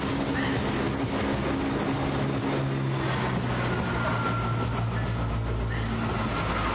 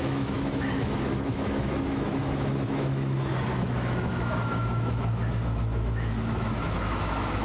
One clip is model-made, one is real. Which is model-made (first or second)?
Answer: second